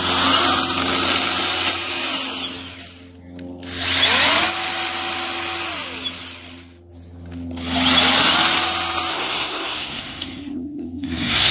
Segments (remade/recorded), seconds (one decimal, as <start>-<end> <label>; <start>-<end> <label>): 0.0-9.1 recorded; 9.1-11.5 remade

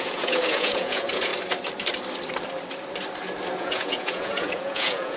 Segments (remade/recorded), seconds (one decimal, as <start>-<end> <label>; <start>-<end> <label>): 0.0-1.3 remade; 1.3-3.6 recorded; 3.6-5.2 remade

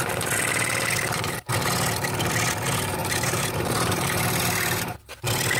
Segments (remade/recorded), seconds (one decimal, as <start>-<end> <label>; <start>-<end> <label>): 0.0-3.0 recorded; 3.0-5.1 remade; 5.1-5.6 recorded

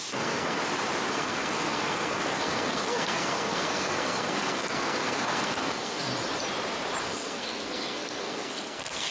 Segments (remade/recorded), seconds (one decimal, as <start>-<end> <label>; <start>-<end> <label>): 0.0-0.6 remade; 0.6-1.1 recorded; 1.1-6.1 remade; 6.1-7.0 recorded; 7.0-9.1 remade

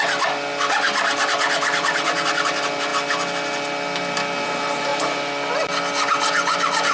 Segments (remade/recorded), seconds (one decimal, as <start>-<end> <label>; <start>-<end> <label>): 0.0-6.9 recorded

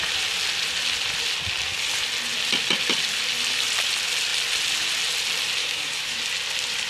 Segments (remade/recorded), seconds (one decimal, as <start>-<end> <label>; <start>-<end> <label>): 0.0-5.6 recorded; 5.6-6.2 remade; 6.2-6.9 recorded

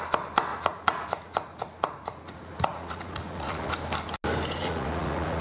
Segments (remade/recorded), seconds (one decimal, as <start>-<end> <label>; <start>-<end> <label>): 0.0-0.5 recorded; 0.5-3.7 remade; 3.7-4.6 recorded; 4.6-5.4 remade